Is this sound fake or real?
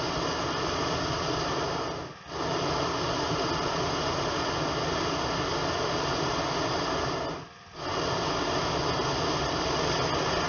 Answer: real